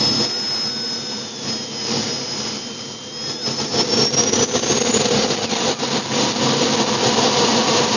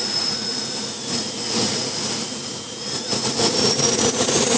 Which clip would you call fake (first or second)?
second